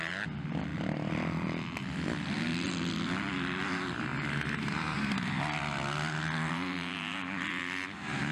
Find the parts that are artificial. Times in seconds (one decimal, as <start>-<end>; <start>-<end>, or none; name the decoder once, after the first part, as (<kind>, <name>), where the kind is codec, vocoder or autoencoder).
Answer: none